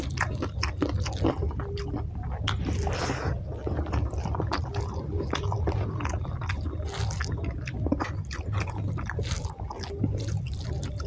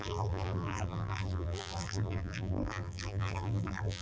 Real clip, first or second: first